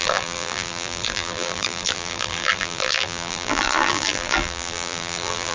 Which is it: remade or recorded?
remade